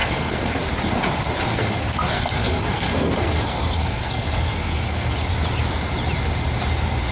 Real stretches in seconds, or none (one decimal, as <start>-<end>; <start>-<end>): 0.6-1.5; 5.1-7.1